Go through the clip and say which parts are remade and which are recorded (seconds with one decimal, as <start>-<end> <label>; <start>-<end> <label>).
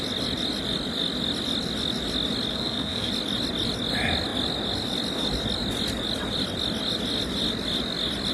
0.0-2.5 recorded; 2.5-3.1 remade; 3.1-8.3 recorded